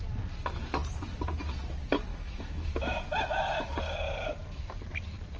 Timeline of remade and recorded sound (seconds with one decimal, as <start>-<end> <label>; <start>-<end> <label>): 0.0-2.1 recorded; 2.1-3.7 remade; 3.7-5.4 recorded